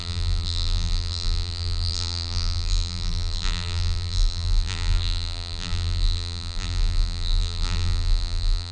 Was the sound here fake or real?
fake